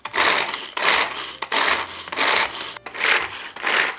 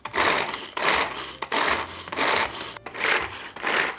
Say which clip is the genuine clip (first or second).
first